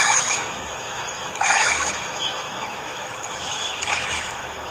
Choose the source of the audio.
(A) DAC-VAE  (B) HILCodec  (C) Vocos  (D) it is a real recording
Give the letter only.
A